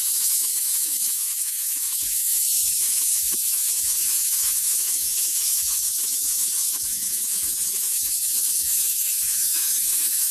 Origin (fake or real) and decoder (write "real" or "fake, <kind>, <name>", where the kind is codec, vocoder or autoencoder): fake, autoencoder, DAC-VAE